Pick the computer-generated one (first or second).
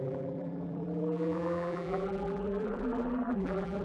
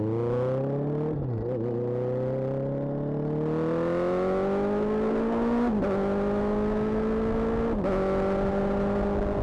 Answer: first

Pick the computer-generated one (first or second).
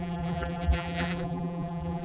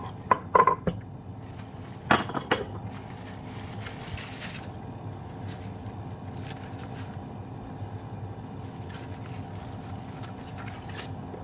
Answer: first